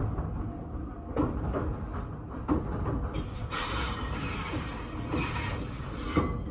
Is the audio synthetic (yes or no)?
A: no